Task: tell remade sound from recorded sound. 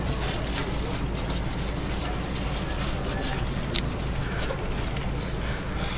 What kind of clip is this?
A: recorded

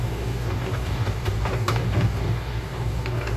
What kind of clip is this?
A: remade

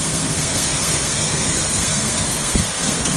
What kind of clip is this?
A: remade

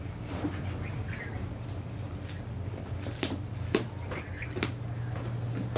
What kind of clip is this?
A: recorded